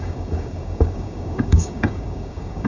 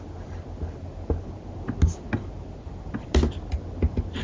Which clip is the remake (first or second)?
first